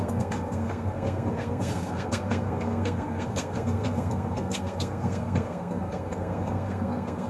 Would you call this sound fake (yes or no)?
yes